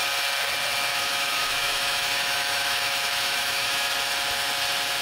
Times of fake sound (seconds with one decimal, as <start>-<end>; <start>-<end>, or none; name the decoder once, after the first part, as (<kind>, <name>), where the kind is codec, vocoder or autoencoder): 0.9-3.9 (autoencoder, DAC-VAE)